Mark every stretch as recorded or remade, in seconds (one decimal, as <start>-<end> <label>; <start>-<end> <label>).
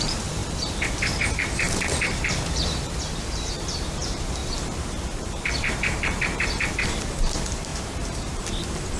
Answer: 0.0-0.4 remade; 0.4-1.3 recorded; 1.3-9.0 remade